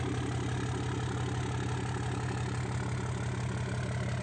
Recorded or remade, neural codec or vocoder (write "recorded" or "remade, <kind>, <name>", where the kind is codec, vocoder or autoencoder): recorded